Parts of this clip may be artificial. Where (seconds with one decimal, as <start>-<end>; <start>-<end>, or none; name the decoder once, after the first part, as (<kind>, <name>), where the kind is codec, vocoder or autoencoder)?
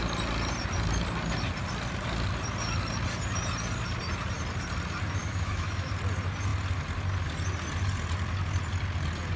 5.2-5.9 (autoencoder, DAC-VAE)